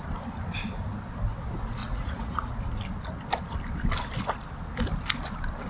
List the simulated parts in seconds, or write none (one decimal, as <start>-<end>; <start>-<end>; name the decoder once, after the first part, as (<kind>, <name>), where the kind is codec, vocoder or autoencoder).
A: 1.8-2.5 (vocoder, Vocos)